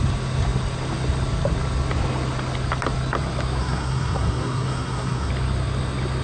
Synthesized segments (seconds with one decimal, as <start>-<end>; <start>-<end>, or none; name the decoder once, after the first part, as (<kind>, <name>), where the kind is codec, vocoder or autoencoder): 3.6-5.3 (codec, SNAC)